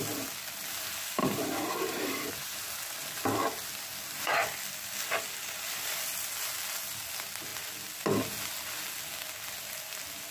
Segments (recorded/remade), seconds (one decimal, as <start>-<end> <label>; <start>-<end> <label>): 0.0-1.2 recorded; 1.2-2.3 remade; 2.3-3.9 recorded; 3.9-6.5 remade; 6.5-10.3 recorded